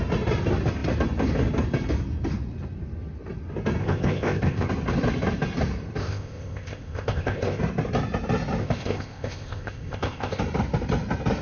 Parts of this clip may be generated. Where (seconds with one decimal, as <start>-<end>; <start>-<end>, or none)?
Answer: 3.8-4.7; 6.0-7.6; 8.6-10.4